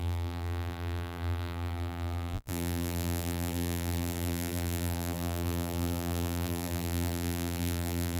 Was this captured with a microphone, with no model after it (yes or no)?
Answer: no